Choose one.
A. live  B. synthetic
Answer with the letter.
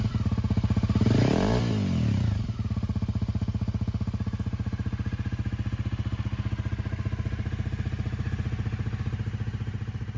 A